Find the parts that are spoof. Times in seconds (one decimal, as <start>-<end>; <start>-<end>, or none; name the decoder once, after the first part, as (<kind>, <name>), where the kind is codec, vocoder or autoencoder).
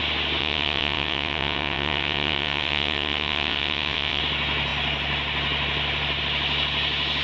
0.4-4.2 (vocoder, WaveNeXt)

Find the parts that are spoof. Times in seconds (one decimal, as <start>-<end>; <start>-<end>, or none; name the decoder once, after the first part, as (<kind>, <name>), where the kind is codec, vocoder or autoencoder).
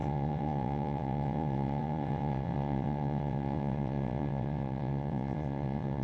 0.0-6.0 (vocoder, WaveNeXt)